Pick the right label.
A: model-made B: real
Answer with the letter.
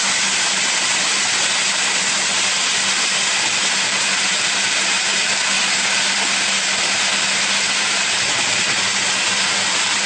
B